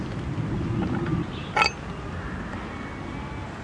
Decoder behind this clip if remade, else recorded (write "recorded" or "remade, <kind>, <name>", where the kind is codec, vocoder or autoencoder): recorded